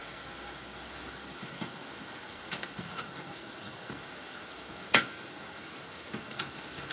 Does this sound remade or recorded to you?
remade